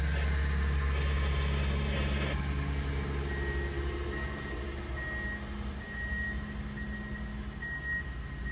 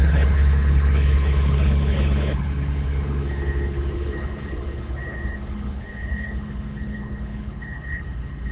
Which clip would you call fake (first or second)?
second